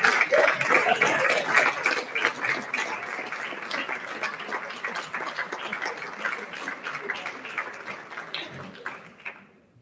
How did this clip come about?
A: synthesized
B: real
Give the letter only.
B